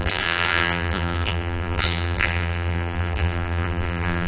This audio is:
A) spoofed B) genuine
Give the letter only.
A